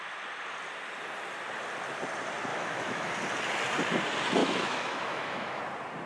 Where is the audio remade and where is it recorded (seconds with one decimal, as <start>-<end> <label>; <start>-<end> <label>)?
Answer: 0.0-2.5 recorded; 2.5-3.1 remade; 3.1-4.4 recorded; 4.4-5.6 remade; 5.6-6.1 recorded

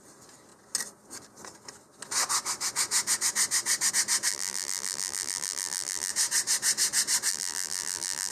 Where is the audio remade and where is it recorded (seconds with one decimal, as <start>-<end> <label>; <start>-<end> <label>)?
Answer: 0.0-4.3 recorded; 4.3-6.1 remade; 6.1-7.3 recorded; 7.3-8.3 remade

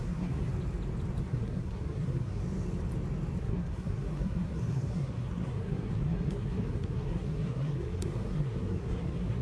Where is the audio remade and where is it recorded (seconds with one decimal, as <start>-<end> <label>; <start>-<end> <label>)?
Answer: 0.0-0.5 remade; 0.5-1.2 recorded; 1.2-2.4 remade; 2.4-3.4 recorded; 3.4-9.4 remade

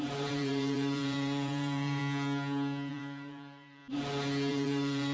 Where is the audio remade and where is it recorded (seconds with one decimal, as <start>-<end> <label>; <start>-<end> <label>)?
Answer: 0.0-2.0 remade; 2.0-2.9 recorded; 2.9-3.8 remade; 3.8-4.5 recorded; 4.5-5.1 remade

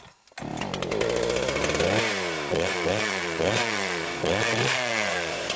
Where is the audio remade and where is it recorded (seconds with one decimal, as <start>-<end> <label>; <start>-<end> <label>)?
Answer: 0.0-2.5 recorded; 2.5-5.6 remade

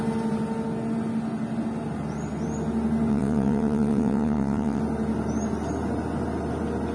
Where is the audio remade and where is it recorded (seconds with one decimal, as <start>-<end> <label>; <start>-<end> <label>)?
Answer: 0.0-3.1 recorded; 3.1-4.8 remade; 4.8-6.9 recorded

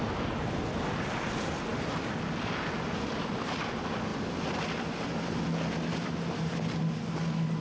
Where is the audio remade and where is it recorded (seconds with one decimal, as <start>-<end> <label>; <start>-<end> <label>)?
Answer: 0.0-7.6 recorded

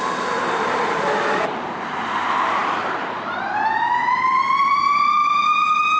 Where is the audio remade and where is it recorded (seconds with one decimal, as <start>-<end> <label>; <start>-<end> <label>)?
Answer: 0.0-5.2 remade; 5.2-6.0 recorded